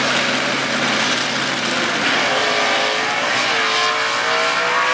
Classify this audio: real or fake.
real